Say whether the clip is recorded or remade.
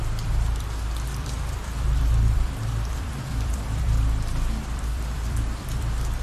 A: remade